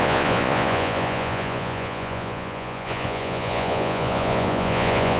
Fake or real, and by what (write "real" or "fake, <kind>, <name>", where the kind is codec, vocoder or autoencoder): fake, vocoder, Vocos